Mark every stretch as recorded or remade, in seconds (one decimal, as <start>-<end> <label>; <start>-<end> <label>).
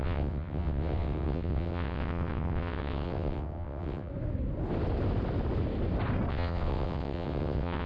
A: 0.0-4.1 remade; 4.1-6.3 recorded; 6.3-7.9 remade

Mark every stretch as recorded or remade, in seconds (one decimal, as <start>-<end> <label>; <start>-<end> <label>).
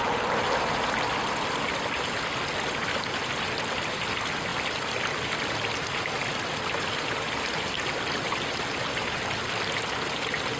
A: 0.0-10.6 recorded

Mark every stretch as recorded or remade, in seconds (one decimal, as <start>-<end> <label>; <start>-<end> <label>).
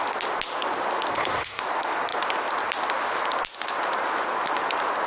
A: 0.0-1.1 recorded; 1.1-1.6 remade; 1.6-5.1 recorded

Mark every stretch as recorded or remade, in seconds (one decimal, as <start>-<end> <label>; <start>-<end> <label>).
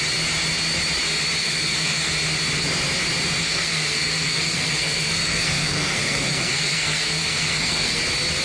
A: 0.0-1.4 recorded; 1.4-2.1 remade; 2.1-3.4 recorded; 3.4-8.0 remade; 8.0-8.4 recorded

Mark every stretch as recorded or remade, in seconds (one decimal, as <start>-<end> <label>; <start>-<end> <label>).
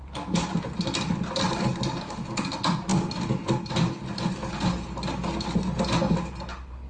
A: 0.0-6.9 recorded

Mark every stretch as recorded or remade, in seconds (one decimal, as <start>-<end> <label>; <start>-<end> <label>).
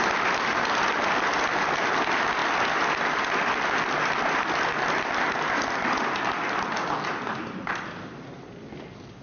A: 0.0-9.2 recorded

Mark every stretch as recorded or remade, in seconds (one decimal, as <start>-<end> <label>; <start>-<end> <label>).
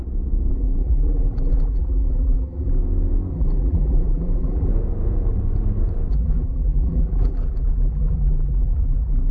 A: 0.0-0.5 recorded; 0.5-2.8 remade; 2.8-3.3 recorded; 3.3-4.7 remade; 4.7-6.1 recorded; 6.1-9.3 remade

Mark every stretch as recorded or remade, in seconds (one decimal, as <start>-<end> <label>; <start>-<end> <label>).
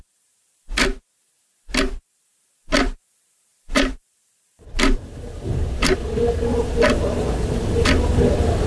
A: 0.0-3.5 recorded; 3.5-5.1 remade; 5.1-8.7 recorded